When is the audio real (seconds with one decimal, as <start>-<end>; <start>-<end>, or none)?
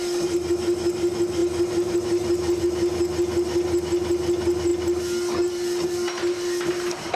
0.0-7.2